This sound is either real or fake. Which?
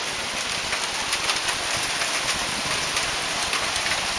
real